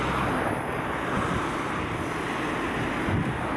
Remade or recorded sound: recorded